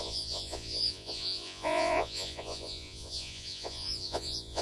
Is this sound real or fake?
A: fake